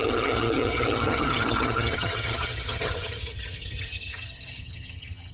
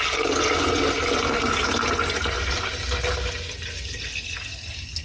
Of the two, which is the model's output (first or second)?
first